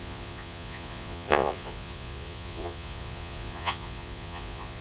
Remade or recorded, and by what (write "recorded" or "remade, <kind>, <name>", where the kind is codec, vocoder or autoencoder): remade, vocoder, Vocos